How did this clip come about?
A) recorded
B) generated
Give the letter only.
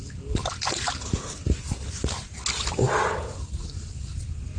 A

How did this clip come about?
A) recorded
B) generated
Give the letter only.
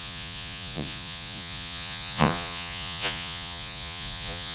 B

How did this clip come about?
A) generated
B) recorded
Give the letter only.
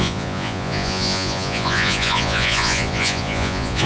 A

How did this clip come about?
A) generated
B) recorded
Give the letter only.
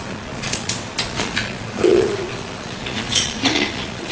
A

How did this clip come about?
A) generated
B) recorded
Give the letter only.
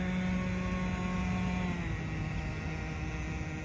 B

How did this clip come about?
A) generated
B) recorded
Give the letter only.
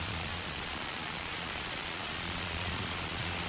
A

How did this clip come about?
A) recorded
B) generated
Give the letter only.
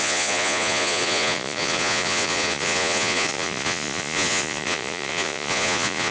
B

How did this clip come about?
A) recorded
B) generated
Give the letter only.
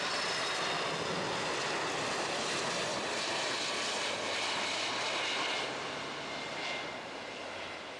A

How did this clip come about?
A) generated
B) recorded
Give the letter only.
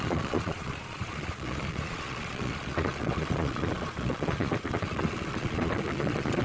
A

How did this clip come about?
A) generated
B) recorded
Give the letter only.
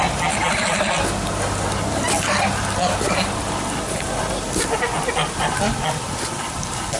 B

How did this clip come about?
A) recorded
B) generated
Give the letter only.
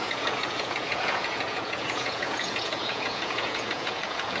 B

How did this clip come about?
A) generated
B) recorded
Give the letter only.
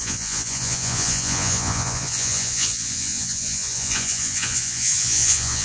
A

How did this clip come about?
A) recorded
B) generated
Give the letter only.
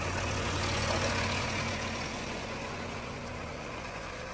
B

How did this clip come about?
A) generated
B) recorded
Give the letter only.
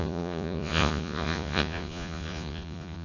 A